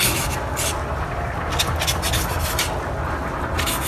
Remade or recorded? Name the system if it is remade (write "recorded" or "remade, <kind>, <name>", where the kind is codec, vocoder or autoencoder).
recorded